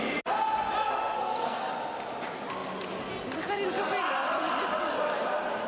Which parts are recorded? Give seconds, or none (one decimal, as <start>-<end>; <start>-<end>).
0.0-0.8; 1.7-5.7